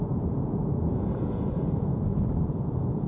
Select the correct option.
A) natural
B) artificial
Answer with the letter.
B